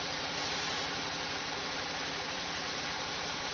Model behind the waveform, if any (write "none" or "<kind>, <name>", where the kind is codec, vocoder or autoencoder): vocoder, Vocos